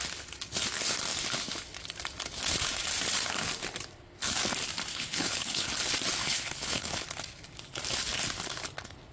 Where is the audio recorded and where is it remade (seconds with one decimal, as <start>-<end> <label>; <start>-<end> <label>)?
0.0-4.9 recorded; 4.9-5.7 remade; 5.7-6.2 recorded; 6.2-7.0 remade; 7.0-9.1 recorded